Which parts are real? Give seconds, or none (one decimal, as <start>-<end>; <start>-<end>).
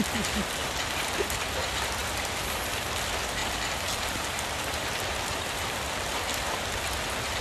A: 0.0-0.6; 1.5-3.4; 6.7-7.4